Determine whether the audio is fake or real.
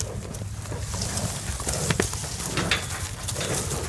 real